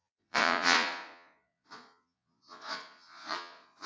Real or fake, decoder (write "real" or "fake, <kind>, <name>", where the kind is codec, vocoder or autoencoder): fake, vocoder, Vocos